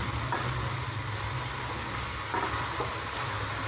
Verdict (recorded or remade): recorded